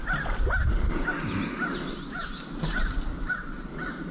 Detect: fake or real real